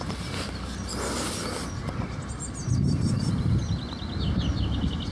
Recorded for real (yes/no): yes